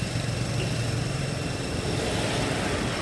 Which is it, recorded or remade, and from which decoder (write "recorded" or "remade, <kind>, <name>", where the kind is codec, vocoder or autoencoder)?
recorded